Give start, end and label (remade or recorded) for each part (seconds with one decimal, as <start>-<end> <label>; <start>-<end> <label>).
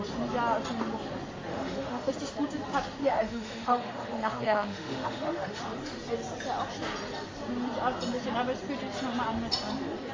0.0-1.5 recorded; 1.5-2.1 remade; 2.1-3.0 recorded; 3.0-5.6 remade; 5.6-10.1 recorded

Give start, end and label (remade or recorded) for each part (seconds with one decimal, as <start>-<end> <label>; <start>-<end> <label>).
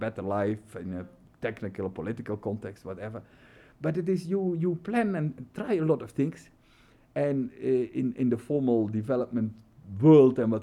0.0-10.6 recorded